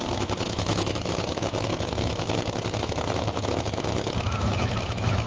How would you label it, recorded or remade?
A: remade